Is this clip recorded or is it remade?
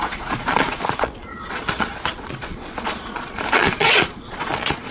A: remade